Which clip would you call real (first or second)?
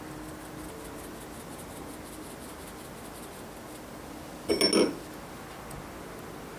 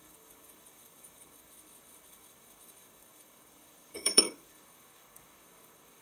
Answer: first